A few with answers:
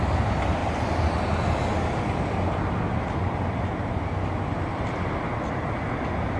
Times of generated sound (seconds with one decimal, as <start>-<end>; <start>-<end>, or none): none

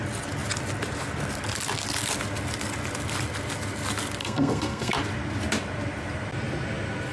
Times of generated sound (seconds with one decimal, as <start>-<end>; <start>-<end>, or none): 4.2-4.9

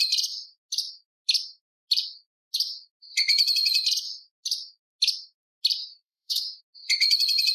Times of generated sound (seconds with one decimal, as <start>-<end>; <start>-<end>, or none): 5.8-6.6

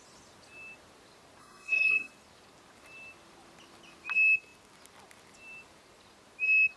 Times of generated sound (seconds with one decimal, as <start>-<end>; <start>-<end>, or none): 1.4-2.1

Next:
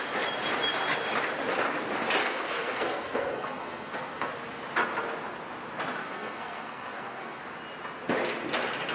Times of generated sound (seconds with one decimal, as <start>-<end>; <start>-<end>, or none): 2.2-4.3; 6.0-7.4

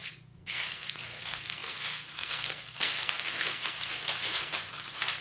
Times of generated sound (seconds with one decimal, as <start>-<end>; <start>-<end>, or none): 0.0-5.2